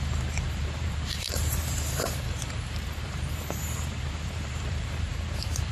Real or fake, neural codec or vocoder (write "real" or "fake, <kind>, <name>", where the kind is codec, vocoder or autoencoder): fake, vocoder, BigVGAN v2